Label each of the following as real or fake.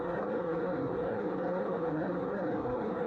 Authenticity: fake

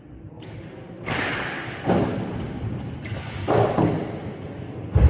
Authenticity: real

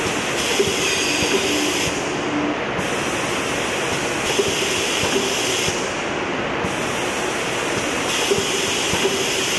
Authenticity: real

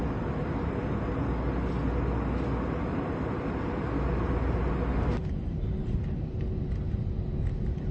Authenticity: real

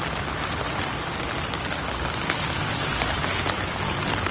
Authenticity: real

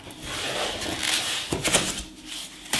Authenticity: real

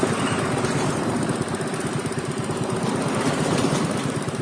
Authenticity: fake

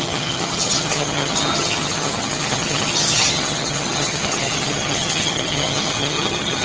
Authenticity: fake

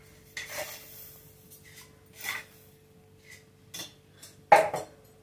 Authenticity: real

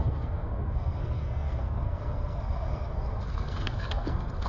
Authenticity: fake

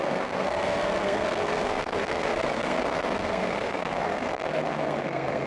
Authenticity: fake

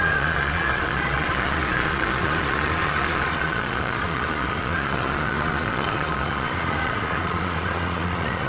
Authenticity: fake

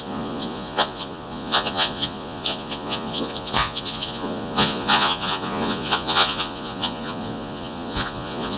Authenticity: fake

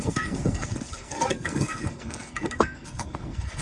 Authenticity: fake